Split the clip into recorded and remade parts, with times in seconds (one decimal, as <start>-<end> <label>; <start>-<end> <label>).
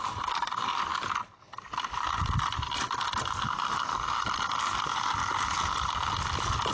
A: 0.0-6.7 recorded